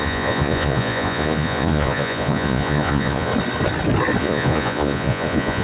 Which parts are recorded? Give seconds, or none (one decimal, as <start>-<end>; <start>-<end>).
3.3-4.2